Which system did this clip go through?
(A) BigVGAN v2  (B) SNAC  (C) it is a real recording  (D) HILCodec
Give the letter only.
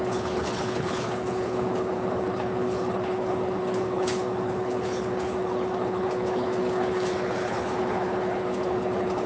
D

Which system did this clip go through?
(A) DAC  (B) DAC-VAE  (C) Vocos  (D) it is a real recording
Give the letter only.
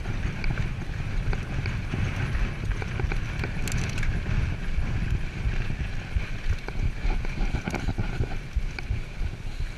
D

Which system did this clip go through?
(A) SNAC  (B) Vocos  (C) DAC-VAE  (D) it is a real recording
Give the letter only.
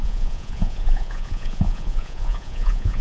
B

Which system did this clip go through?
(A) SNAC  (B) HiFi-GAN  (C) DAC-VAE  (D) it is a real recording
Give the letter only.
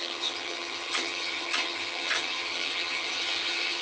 B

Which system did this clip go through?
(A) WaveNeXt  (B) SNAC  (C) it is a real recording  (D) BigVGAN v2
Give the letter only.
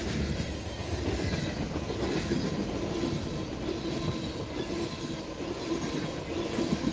C